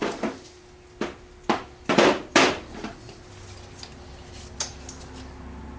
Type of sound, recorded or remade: recorded